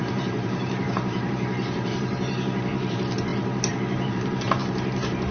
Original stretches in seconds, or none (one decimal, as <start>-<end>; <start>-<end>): none